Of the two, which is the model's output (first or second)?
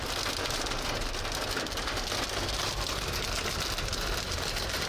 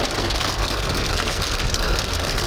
second